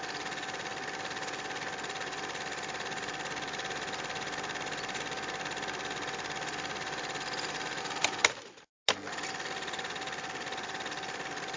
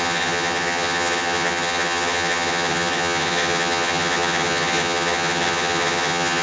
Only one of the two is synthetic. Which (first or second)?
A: second